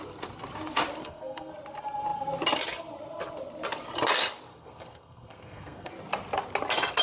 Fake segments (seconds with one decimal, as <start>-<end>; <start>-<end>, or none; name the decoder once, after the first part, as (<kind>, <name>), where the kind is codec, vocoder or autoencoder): 1.0-1.5 (codec, SNAC); 4.5-5.9